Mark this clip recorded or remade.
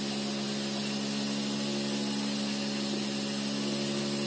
recorded